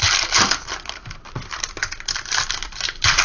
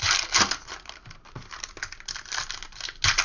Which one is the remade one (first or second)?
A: first